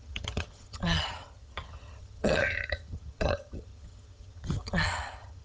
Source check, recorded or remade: remade